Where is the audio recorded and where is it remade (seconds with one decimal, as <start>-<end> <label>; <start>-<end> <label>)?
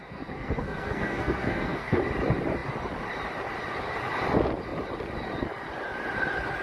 0.0-2.0 remade; 2.0-6.6 recorded